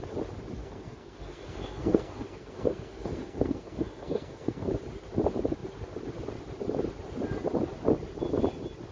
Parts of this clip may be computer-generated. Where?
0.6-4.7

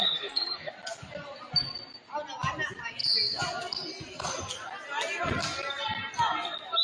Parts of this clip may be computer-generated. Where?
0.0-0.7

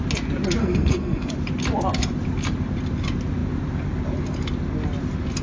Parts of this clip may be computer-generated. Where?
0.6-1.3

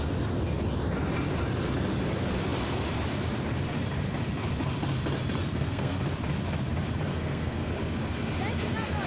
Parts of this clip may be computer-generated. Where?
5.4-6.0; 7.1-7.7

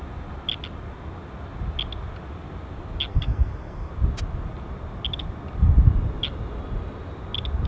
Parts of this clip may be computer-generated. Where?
3.1-3.9

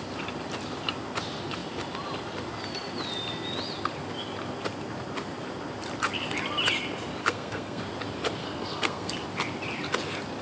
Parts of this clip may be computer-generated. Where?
7.2-7.8; 8.4-9.1